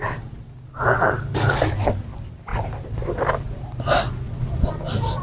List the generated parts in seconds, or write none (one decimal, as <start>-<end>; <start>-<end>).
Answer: none